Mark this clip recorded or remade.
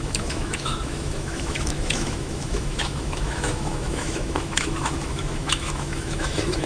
remade